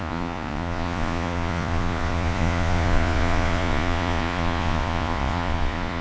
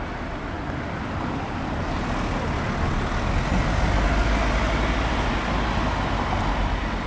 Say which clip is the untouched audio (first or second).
second